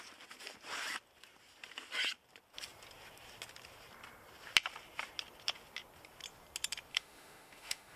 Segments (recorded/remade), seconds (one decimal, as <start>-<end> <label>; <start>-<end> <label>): 0.0-6.9 recorded; 6.9-8.0 remade